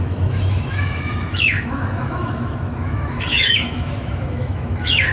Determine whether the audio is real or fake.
fake